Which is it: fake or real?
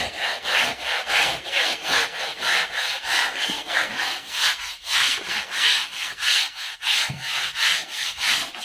fake